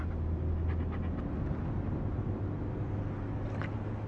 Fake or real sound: real